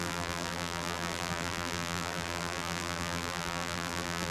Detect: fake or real fake